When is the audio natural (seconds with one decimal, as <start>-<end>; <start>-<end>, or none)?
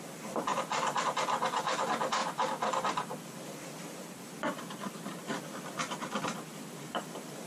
0.0-0.5; 1.0-2.2; 6.4-7.5